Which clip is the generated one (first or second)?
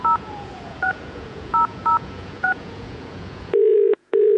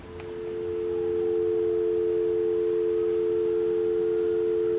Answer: first